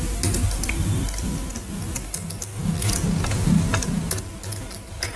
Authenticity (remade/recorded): recorded